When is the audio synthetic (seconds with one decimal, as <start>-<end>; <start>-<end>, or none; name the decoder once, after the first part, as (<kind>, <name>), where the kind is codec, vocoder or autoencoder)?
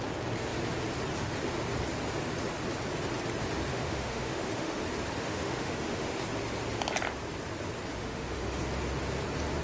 3.7-4.8 (autoencoder, DAC-VAE); 5.2-6.2; 7.9-8.6